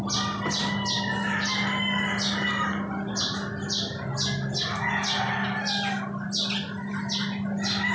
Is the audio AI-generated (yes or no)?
no